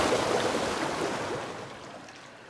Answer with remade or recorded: recorded